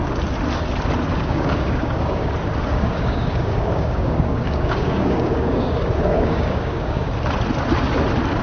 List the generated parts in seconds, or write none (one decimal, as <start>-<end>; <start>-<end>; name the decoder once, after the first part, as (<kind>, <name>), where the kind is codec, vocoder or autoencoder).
1.1-2.3 (codec, DAC); 2.7-7.1